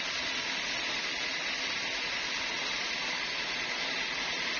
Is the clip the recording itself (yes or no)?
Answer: yes